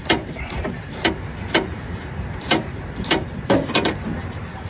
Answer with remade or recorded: remade